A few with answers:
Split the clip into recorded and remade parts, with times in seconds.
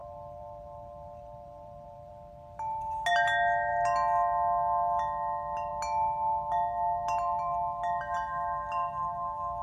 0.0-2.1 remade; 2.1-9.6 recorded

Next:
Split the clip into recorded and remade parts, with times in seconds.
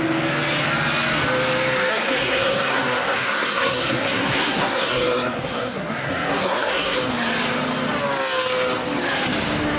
0.0-1.9 recorded; 1.9-7.0 remade; 7.0-9.8 recorded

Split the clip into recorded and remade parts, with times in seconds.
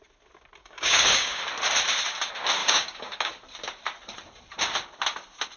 0.0-0.6 recorded; 0.6-1.4 remade; 1.4-2.6 recorded; 2.6-3.3 remade; 3.3-5.6 recorded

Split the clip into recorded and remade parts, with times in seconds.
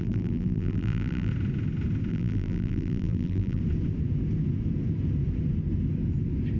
0.0-1.3 remade; 1.3-2.1 recorded; 2.1-3.6 remade; 3.6-6.6 recorded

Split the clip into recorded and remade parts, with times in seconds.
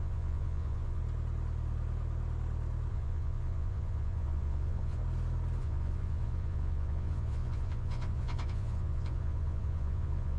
0.0-1.0 remade; 1.0-2.9 recorded; 2.9-5.0 remade; 5.0-5.6 recorded; 5.6-10.4 remade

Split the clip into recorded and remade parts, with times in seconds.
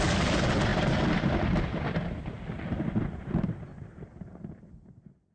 0.0-5.3 recorded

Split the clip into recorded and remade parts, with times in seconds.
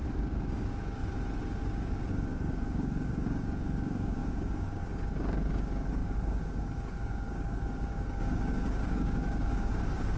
0.0-1.0 remade; 1.0-1.6 recorded; 1.6-10.2 remade